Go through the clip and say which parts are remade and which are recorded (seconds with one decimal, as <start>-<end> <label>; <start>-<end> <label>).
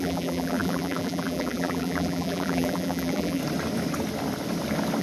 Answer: 0.0-3.4 remade; 3.4-5.0 recorded